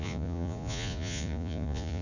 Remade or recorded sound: remade